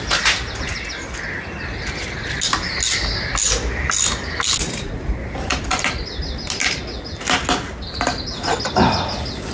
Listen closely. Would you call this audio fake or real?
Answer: real